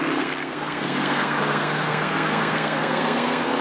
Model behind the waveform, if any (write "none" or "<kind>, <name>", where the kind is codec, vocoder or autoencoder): codec, SNAC